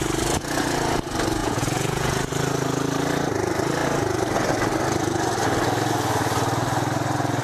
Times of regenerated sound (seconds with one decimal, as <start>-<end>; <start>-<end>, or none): 1.4-2.3